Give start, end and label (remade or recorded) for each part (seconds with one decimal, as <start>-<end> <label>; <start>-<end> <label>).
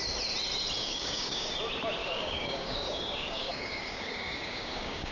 0.0-0.8 recorded; 0.8-1.5 remade; 1.5-2.0 recorded; 2.0-5.1 remade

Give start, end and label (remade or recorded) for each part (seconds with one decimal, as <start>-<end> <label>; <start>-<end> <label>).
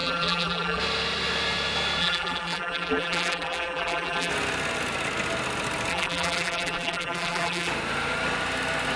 0.0-0.8 remade; 0.8-2.0 recorded; 2.0-4.3 remade; 4.3-5.9 recorded; 5.9-7.7 remade; 7.7-9.0 recorded